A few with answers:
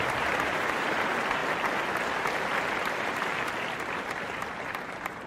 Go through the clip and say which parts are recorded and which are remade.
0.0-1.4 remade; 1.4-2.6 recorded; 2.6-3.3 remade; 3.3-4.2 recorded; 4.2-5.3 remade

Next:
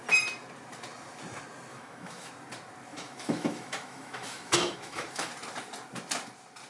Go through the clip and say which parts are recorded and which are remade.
0.0-1.7 recorded; 1.7-2.3 remade; 2.3-2.9 recorded; 2.9-5.3 remade; 5.3-6.7 recorded